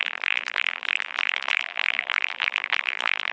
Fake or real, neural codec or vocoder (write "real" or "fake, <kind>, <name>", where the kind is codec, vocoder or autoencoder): fake, vocoder, BigVGAN v2